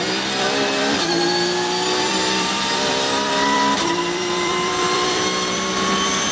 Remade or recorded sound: remade